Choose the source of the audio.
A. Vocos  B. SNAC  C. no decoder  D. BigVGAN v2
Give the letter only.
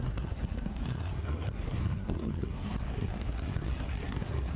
B